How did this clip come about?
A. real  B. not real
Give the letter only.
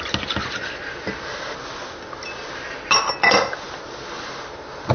A